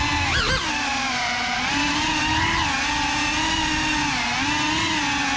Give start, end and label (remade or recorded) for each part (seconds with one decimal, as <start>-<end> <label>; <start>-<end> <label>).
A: 0.0-0.9 recorded; 0.9-2.2 remade; 2.2-5.4 recorded